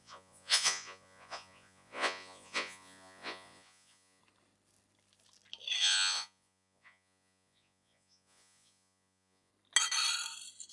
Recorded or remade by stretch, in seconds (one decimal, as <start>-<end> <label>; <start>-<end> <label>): 0.0-4.2 remade; 4.2-5.8 recorded; 5.8-9.5 remade; 9.5-10.7 recorded